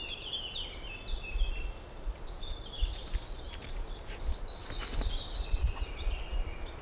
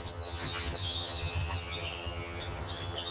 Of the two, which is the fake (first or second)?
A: second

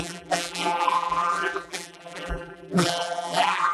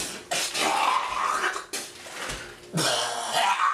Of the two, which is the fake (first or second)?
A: first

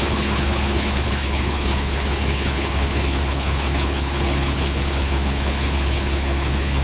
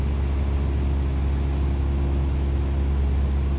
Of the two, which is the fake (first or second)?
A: first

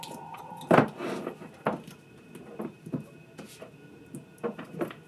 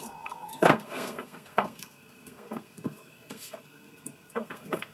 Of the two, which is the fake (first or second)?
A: second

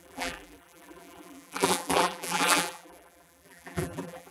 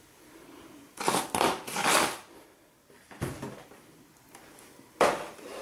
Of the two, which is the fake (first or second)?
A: first